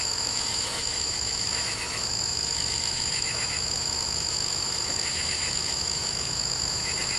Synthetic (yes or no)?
yes